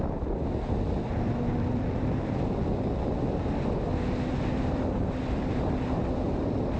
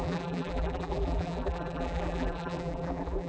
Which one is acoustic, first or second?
first